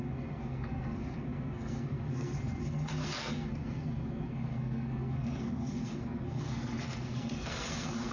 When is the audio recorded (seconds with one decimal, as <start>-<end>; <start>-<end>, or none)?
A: none